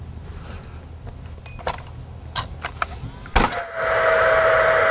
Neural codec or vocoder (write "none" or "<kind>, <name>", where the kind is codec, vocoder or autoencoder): none